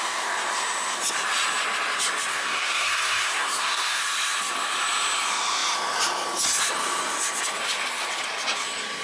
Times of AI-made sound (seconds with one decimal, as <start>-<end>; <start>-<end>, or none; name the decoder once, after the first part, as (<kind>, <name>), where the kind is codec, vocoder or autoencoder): 2.3-4.0 (codec, SNAC)